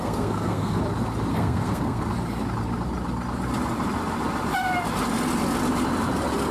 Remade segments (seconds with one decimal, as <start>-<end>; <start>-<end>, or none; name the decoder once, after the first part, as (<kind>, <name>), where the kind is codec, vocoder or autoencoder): 0.0-0.8 (codec, SNAC); 1.3-2.1